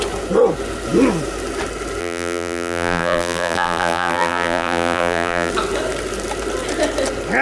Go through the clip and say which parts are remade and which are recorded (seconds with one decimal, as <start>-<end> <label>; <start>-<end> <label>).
0.0-2.0 recorded; 2.0-5.5 remade; 5.5-7.4 recorded